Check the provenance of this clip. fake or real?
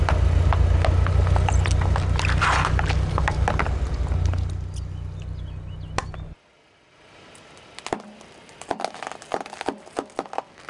real